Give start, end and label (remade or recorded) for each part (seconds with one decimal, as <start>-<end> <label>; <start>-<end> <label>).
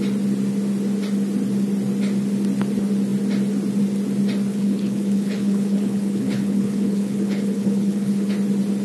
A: 0.0-4.5 recorded; 4.5-8.3 remade; 8.3-8.8 recorded